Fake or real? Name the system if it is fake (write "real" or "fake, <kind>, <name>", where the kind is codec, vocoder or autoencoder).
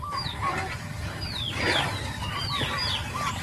real